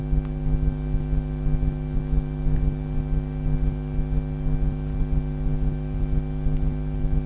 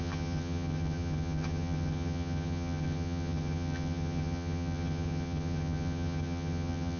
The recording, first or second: first